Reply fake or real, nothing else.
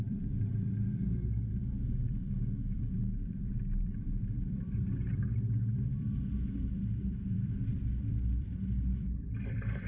fake